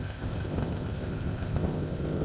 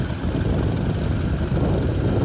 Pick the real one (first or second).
second